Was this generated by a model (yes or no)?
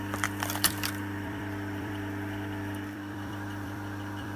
yes